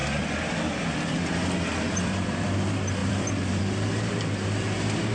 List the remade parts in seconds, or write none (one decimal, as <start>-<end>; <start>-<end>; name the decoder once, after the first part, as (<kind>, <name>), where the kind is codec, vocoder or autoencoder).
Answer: 1.7-2.5 (vocoder, BigVGAN v2); 3.0-3.6